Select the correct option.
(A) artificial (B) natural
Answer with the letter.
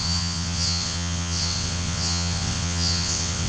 A